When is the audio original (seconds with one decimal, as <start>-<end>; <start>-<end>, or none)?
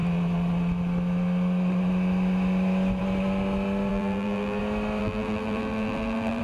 0.0-3.9; 4.6-5.0